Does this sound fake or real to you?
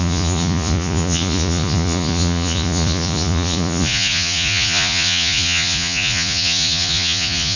fake